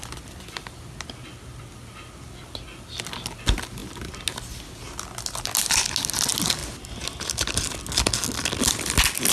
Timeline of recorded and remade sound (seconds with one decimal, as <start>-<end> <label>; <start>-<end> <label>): 0.0-9.3 recorded